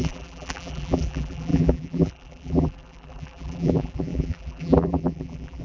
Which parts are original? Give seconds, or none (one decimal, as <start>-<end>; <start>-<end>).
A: none

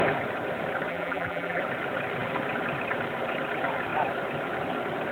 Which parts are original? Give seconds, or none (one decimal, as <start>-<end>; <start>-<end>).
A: 0.0-0.9; 1.6-5.1

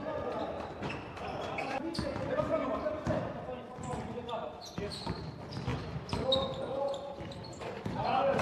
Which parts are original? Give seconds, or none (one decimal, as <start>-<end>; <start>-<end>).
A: 0.0-8.4